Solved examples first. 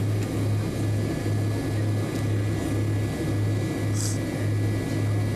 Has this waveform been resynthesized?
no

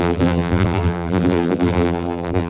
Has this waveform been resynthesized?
yes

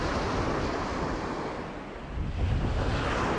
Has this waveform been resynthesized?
no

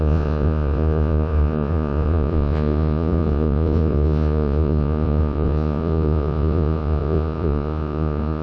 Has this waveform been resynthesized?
yes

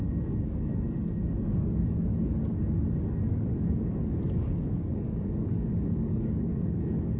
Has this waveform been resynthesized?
yes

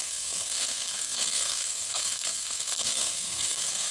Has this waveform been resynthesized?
yes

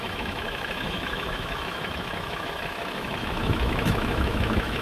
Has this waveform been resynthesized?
yes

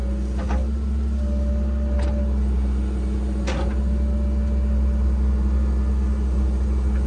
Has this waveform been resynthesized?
no